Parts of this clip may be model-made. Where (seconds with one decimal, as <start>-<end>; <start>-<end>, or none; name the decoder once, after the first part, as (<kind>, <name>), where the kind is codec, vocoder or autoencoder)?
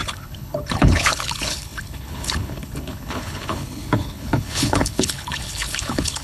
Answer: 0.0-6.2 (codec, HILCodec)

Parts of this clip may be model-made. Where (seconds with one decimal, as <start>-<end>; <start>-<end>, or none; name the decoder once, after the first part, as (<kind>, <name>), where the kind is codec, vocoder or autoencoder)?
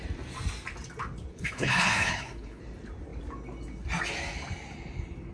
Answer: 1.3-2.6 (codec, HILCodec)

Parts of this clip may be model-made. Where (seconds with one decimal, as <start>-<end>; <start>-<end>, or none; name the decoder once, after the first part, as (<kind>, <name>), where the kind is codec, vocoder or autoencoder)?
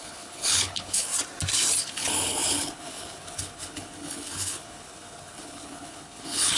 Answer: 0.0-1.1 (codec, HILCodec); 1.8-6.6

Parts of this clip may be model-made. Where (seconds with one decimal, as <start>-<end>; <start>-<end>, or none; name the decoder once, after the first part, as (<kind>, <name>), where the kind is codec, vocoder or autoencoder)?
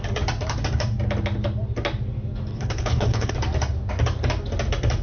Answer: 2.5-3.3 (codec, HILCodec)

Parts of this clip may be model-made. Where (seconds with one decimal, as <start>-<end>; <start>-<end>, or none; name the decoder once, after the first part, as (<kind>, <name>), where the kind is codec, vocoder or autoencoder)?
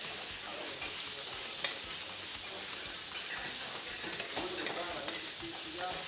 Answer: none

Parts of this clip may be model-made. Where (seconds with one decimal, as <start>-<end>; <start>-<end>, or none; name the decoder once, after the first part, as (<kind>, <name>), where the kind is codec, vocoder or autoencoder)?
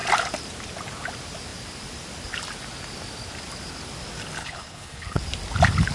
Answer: 4.4-5.2 (codec, HILCodec)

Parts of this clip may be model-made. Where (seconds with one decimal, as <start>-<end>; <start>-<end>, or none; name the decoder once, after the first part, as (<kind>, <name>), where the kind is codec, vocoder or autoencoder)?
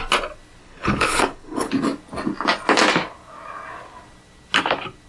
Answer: 0.6-1.7 (codec, HILCodec)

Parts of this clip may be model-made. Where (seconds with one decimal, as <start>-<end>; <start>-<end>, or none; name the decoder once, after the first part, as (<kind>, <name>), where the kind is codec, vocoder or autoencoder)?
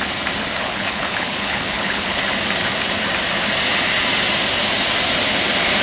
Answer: 0.6-2.2 (codec, HILCodec)